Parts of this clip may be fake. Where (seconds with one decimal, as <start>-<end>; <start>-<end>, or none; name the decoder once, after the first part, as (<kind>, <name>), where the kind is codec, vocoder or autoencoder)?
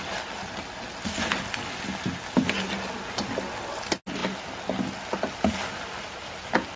none